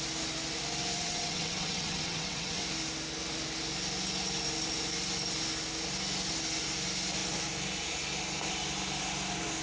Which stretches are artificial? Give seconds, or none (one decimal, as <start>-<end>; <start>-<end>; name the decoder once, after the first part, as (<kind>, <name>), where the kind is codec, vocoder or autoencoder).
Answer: 1.0-2.6 (vocoder, WaveNeXt)